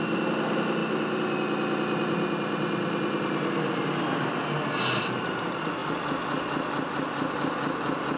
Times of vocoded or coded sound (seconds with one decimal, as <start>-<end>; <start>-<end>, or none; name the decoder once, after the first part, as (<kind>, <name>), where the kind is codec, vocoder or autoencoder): none